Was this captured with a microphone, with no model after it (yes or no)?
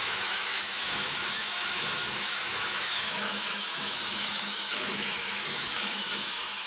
no